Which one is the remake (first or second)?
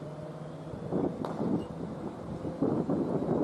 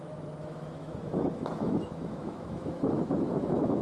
second